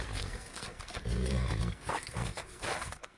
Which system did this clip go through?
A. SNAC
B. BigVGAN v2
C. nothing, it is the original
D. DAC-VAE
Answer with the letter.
A